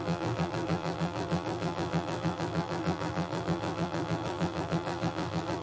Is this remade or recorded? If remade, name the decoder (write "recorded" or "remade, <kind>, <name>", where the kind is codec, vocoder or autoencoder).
remade, vocoder, BigVGAN v2